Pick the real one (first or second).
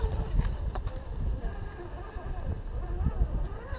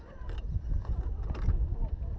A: first